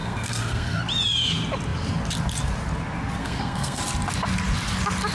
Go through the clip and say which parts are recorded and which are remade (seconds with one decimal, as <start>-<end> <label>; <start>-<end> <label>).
0.0-0.8 remade; 0.8-3.2 recorded; 3.2-3.8 remade; 3.8-5.1 recorded